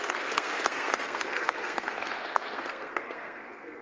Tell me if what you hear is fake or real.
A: fake